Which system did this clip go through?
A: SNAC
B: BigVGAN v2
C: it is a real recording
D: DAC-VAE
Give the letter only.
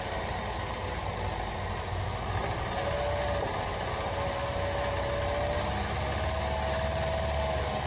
C